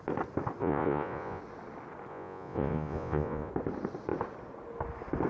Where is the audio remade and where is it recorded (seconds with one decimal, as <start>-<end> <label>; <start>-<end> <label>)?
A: 0.0-0.6 recorded; 0.6-1.4 remade; 1.4-2.1 recorded; 2.1-3.5 remade; 3.5-5.3 recorded